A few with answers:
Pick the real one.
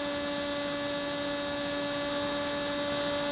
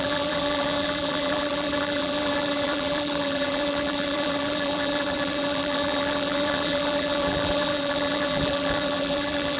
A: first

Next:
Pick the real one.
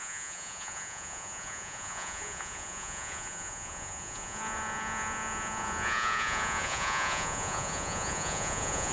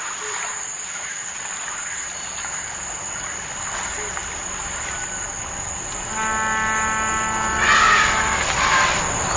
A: second